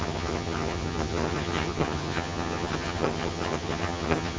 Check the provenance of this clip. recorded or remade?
remade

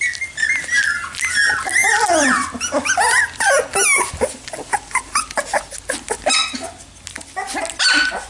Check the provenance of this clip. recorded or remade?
recorded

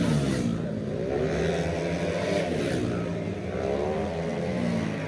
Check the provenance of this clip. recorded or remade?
recorded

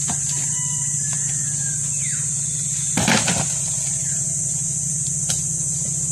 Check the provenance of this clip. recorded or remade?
recorded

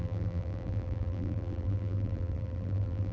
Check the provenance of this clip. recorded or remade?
remade